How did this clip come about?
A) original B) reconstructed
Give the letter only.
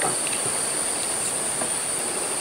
B